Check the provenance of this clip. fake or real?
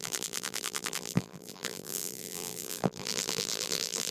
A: fake